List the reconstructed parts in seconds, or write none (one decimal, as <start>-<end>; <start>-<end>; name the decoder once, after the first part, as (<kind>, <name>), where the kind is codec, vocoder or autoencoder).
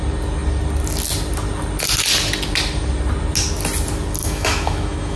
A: 4.2-5.2 (autoencoder, DAC-VAE)